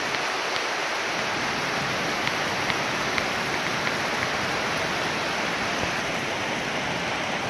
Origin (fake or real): real